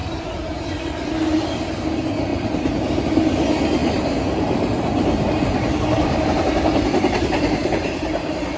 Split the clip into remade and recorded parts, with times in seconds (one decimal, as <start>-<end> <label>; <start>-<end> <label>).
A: 0.0-1.1 remade; 1.1-2.3 recorded; 2.3-3.0 remade; 3.0-3.8 recorded; 3.8-8.6 remade